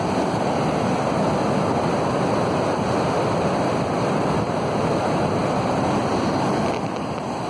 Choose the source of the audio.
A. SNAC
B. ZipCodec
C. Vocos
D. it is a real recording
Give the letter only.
D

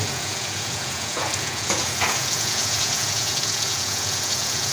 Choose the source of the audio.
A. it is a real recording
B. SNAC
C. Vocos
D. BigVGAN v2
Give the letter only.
C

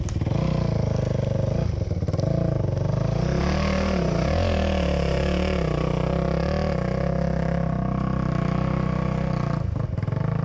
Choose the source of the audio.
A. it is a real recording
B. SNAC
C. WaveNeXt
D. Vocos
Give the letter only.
A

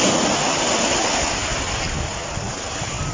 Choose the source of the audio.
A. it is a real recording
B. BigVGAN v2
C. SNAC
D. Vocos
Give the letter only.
A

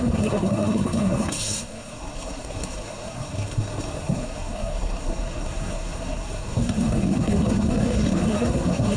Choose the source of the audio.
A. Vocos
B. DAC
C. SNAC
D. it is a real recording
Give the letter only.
C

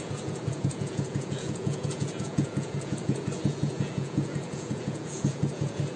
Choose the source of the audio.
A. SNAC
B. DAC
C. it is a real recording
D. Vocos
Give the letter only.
D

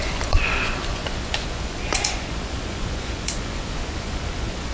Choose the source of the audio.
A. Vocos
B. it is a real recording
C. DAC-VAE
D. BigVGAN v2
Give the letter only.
A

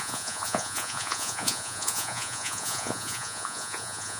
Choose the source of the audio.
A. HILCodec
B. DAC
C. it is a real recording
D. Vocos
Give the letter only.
D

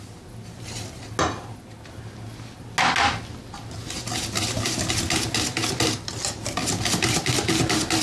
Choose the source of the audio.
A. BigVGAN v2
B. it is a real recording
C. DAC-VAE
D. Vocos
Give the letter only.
B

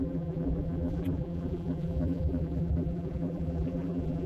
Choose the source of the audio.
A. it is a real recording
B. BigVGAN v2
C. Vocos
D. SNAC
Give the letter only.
B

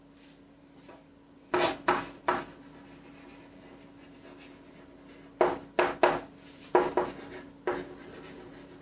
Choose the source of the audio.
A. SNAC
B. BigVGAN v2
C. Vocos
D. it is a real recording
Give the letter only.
D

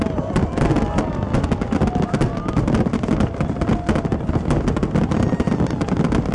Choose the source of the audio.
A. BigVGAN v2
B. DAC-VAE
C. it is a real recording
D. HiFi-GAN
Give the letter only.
C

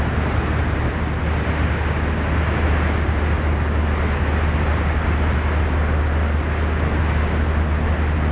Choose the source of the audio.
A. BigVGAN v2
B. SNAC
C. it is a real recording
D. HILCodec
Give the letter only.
C